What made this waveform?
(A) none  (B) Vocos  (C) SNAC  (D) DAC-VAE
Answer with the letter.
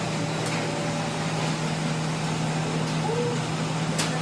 A